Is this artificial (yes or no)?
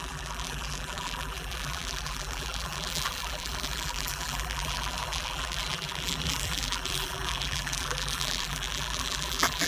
yes